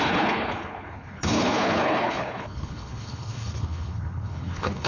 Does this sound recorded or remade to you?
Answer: remade